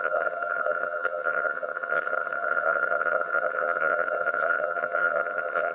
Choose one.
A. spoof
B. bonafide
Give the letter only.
A